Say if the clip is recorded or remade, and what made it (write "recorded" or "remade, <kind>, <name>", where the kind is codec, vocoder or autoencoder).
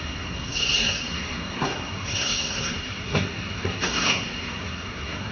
remade, codec, SNAC